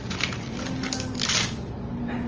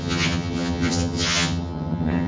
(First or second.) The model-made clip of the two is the second